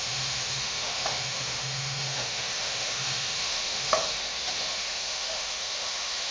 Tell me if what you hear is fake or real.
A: fake